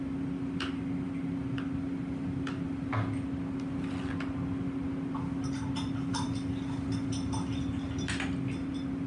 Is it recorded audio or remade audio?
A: recorded